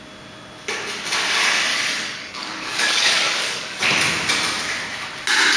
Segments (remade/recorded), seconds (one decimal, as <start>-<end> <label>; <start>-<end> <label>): 0.0-1.7 recorded; 1.7-3.8 remade; 3.8-5.6 recorded